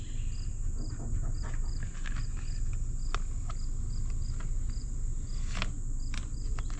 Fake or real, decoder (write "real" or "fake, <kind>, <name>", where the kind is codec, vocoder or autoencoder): real